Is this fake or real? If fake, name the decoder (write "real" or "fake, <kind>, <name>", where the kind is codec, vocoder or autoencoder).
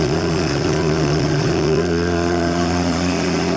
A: fake, vocoder, Vocos